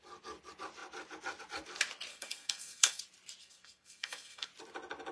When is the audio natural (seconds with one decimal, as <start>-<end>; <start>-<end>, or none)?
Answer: 0.0-2.1; 3.0-3.4; 4.5-5.1